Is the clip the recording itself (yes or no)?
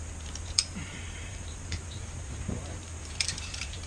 no